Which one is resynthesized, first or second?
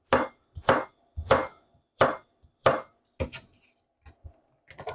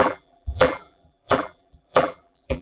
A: second